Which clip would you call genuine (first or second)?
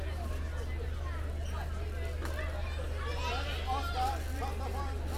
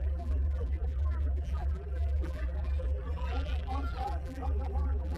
first